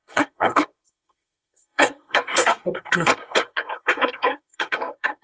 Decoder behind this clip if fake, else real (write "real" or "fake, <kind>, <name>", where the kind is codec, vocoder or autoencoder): fake, codec, SNAC